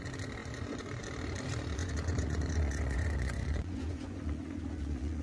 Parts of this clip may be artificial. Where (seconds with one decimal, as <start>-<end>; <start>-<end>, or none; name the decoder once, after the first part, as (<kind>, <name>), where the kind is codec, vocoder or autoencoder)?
0.4-1.0 (vocoder, Vocos); 1.8-5.2